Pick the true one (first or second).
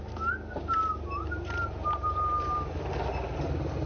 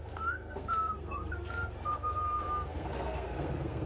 first